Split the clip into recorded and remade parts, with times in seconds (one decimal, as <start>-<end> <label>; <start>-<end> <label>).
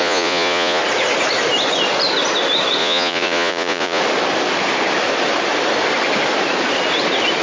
0.0-0.8 remade; 0.8-2.8 recorded; 2.8-4.0 remade; 4.0-7.4 recorded